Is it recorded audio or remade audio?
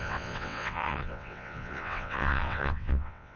remade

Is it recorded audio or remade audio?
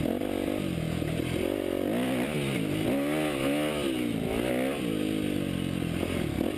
recorded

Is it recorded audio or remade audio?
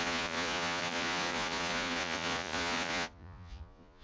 remade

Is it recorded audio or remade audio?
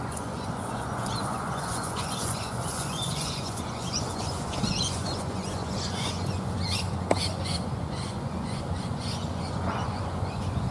remade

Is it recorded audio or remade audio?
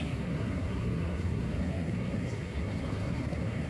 remade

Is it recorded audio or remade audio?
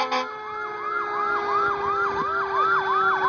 recorded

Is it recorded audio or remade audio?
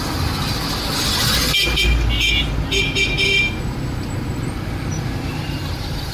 recorded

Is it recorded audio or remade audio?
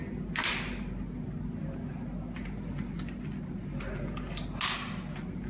recorded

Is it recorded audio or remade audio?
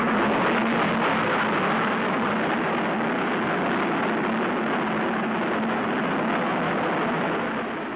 recorded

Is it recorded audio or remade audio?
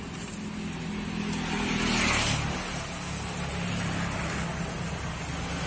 recorded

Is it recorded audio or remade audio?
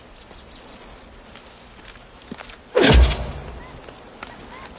recorded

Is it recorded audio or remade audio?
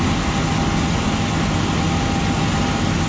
recorded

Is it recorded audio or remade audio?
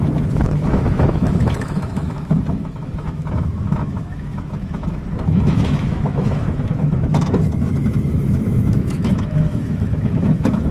remade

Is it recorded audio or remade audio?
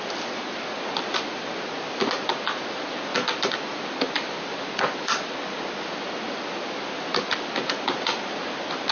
recorded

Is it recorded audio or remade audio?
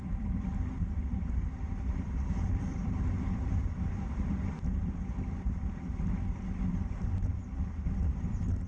remade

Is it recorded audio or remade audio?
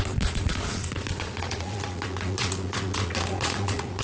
remade